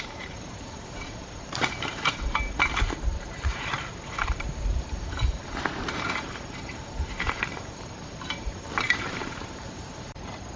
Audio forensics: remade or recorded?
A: remade